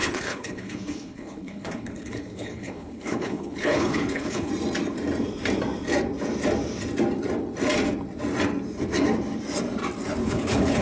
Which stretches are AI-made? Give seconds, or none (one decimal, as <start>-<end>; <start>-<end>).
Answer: 0.0-4.5; 10.2-10.8